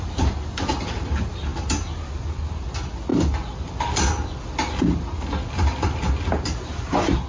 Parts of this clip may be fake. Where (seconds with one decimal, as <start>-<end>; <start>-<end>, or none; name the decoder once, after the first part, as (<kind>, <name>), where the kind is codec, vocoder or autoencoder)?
none